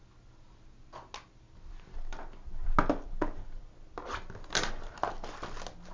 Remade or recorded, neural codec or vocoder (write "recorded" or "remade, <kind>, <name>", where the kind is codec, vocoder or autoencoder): recorded